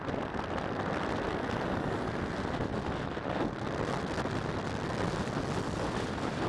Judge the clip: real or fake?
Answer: real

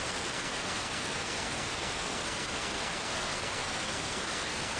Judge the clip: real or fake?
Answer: fake